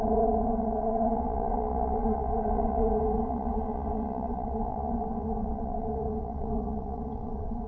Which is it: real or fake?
fake